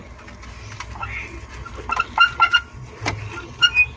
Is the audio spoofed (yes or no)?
no